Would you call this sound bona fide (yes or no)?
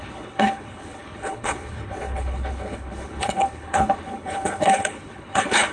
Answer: no